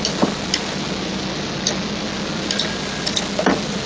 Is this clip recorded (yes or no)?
yes